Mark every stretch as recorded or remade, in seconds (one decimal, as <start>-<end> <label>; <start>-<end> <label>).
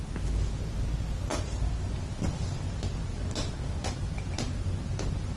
0.0-5.4 recorded